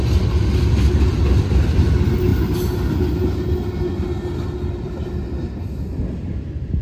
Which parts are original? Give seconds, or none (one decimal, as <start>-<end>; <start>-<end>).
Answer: 0.0-6.8